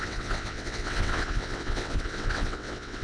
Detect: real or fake fake